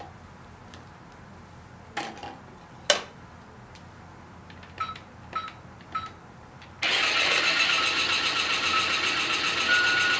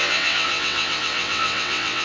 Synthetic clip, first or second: second